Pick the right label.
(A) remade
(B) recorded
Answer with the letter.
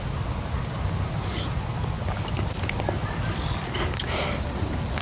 B